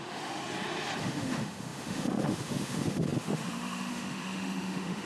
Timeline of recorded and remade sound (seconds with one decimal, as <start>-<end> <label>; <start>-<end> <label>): 0.0-0.4 remade; 0.4-1.0 recorded; 1.0-5.1 remade